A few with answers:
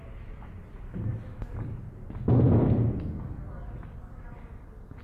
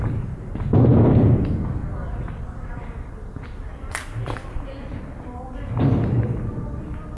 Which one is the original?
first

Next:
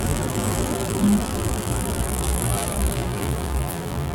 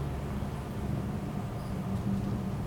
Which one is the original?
second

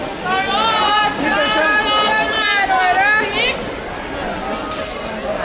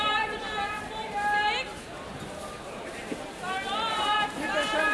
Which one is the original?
first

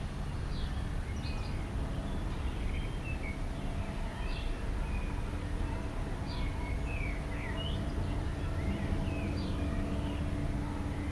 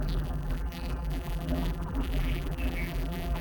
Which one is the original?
first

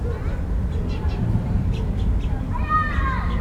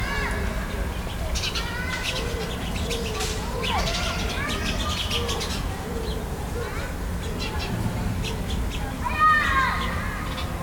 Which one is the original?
second